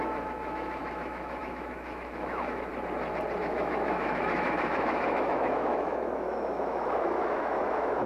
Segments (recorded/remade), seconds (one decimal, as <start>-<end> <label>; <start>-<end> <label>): 0.0-2.7 remade; 2.7-3.4 recorded; 3.4-8.1 remade